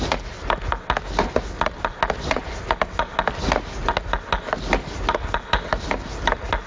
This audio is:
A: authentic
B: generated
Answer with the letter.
A